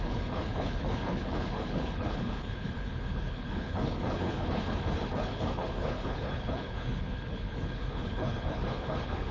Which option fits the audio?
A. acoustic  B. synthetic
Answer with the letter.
B